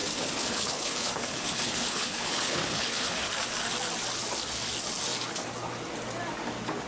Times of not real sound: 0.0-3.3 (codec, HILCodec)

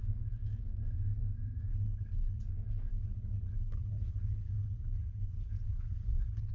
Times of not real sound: 1.7-2.4 (codec, HILCodec); 2.9-6.5

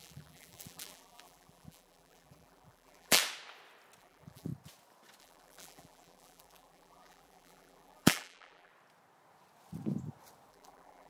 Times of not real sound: 0.0-3.2 (vocoder, BigVGAN v2); 4.0-4.5; 5.2-8.7; 10.5-11.1

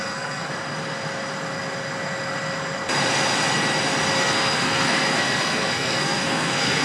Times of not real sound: 0.0-0.5 (codec, SNAC); 4.2-6.8

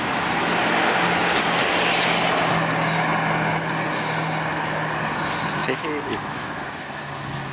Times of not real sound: 5.6-7.0 (autoencoder, DAC-VAE)